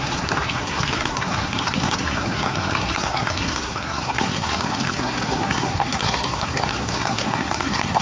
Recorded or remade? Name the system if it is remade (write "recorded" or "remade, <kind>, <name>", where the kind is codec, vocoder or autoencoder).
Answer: remade, codec, SNAC